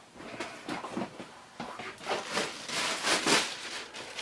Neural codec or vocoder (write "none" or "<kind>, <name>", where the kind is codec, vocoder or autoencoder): none